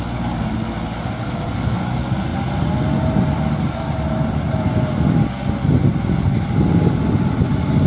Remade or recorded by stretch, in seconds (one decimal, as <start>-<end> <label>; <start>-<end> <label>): 0.0-7.9 recorded